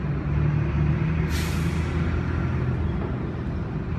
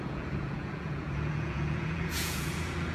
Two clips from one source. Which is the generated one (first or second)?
second